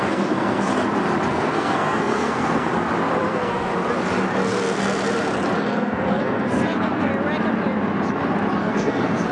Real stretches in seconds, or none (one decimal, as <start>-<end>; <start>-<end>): 0.7-1.3; 2.7-3.3; 3.7-5.6; 7.1-8.6